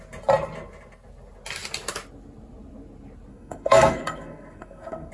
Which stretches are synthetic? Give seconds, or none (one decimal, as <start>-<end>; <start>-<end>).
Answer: 3.3-5.1